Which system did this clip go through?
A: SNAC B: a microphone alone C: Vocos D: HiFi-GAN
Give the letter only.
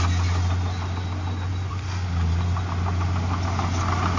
B